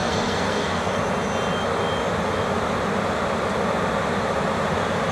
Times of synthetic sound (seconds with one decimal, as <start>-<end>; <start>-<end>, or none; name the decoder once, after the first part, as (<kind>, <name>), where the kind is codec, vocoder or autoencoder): 0.0-1.0 (codec, SNAC)